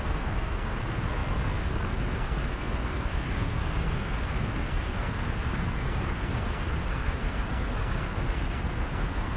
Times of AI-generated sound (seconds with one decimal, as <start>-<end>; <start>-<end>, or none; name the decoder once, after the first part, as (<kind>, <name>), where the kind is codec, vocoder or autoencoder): 0.0-9.4 (codec, SNAC)